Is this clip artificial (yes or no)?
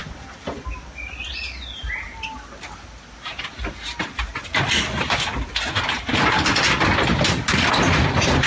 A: no